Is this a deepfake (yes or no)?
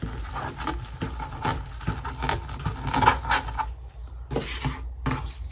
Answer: no